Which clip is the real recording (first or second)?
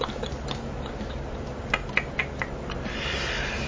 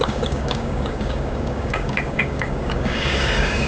first